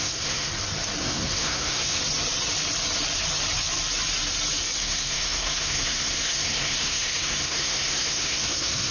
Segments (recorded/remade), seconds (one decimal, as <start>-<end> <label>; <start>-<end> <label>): 0.0-0.5 remade; 0.5-1.0 recorded; 1.0-2.0 remade; 2.0-4.8 recorded; 4.8-8.9 remade